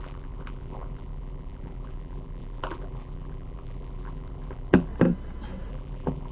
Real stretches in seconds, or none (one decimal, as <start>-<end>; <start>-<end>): 4.9-5.7

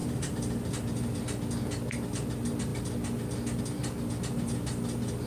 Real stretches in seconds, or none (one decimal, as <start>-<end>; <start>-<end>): 0.7-5.3

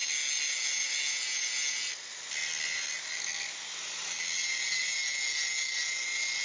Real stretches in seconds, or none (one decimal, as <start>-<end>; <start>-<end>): 0.0-6.4

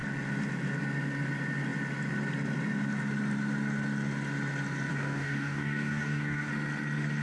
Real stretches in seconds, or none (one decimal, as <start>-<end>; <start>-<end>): 0.0-4.9; 6.5-7.2

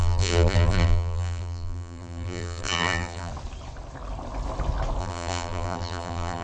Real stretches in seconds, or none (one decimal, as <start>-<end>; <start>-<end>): 3.3-5.0

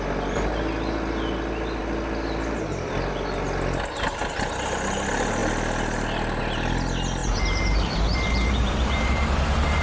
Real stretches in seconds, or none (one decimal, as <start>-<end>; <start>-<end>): 0.0-7.2

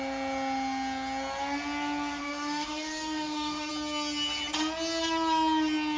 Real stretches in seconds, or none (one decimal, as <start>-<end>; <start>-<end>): 0.0-2.2; 3.7-6.0

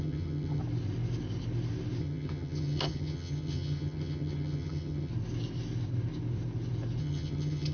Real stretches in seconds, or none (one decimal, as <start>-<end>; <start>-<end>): 0.6-2.0; 5.1-7.0